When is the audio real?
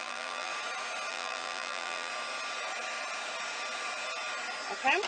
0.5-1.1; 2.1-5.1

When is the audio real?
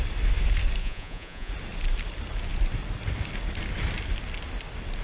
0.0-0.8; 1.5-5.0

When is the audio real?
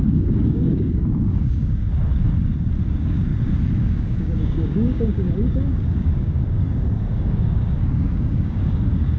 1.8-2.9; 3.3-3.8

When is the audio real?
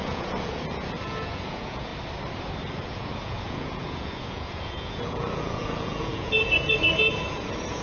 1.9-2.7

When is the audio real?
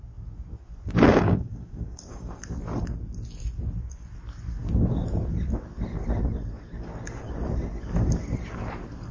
0.0-1.1; 2.4-9.1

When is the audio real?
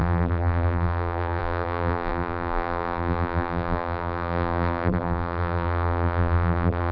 none